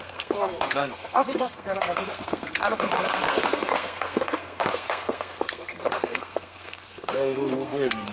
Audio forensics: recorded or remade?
remade